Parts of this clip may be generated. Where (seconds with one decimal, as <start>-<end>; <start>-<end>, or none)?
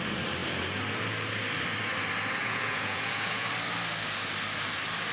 2.4-3.5